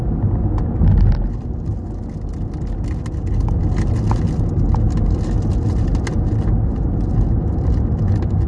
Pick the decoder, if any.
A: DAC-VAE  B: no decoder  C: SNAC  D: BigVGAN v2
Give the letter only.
B